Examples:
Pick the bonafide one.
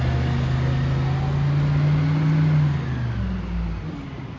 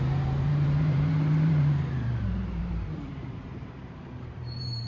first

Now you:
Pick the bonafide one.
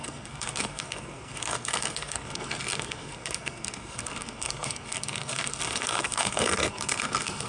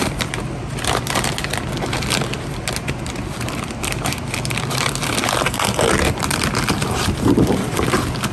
second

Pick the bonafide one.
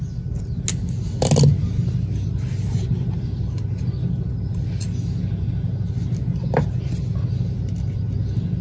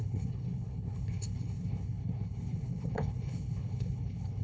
first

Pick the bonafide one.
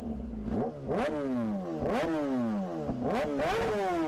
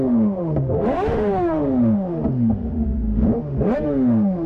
first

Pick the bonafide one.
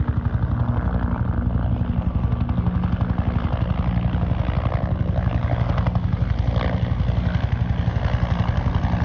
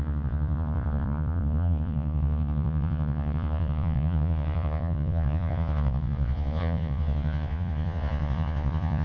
first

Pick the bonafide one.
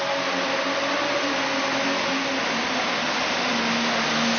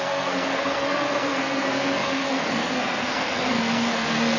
first